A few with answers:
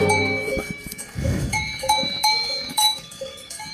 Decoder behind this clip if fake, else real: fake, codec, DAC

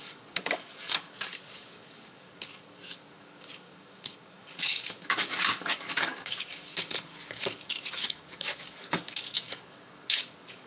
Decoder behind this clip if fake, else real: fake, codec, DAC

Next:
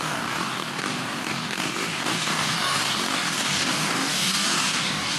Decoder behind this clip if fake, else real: fake, codec, DAC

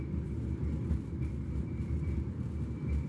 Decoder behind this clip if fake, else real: real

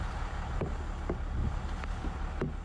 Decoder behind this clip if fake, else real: real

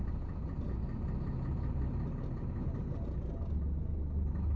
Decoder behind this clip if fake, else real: real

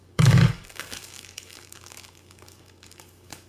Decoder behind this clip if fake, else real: fake, codec, DAC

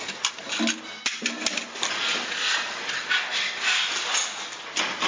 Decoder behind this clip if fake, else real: real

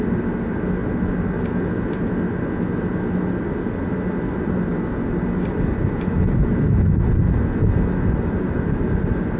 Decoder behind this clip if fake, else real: real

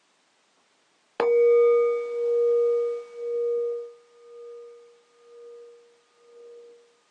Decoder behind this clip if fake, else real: real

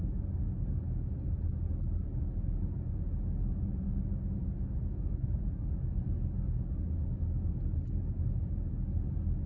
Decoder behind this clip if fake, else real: real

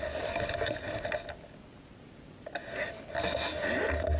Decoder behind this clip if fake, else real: real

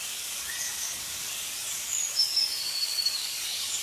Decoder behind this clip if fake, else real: fake, codec, DAC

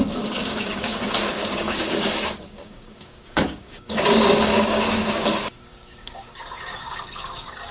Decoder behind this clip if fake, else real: fake, codec, DAC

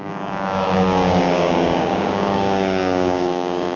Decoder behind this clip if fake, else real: fake, codec, DAC